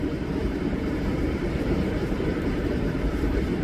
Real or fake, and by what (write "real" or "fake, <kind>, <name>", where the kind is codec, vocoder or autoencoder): fake, vocoder, BigVGAN v2